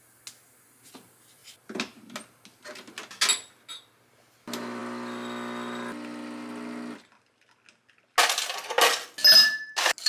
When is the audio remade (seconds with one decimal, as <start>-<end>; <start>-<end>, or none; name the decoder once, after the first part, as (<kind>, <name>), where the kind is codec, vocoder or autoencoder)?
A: none